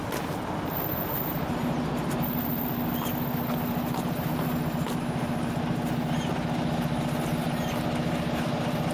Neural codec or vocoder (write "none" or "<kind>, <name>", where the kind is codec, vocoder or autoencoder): none